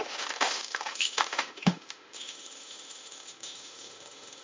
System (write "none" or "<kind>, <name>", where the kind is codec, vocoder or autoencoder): autoencoder, DAC-VAE